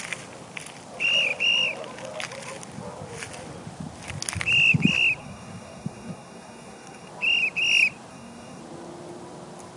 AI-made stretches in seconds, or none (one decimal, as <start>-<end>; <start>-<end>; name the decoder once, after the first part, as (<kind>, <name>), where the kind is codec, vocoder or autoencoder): 5.2-7.1 (codec, SNAC); 8.1-8.6